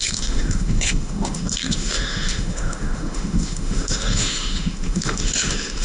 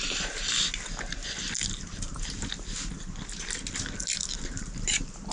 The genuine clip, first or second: second